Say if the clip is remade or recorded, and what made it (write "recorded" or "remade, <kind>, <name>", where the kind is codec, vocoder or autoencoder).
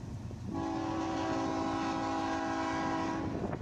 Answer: recorded